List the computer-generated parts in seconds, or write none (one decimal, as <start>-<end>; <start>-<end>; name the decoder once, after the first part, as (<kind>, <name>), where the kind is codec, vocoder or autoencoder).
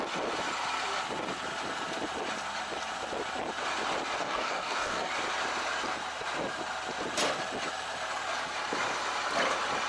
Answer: 4.2-5.1 (codec, DAC)